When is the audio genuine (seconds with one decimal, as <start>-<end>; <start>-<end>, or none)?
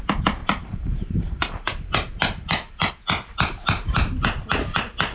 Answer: 0.0-0.4; 2.9-3.3; 3.9-5.1